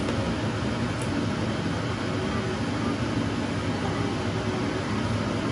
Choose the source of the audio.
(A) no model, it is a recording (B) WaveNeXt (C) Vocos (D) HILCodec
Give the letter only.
A